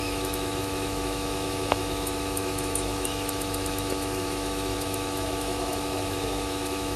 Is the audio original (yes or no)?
no